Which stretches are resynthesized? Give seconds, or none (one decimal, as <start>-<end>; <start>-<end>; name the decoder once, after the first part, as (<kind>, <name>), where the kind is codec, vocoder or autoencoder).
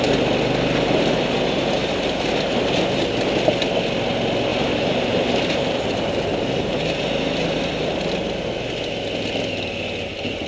1.8-3.0 (vocoder, BigVGAN v2); 4.5-7.6